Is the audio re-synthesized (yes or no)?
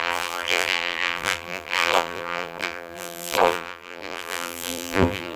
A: yes